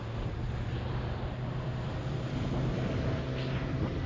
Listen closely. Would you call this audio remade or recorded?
recorded